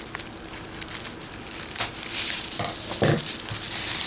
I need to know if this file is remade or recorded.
recorded